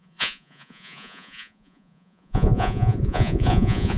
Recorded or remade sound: remade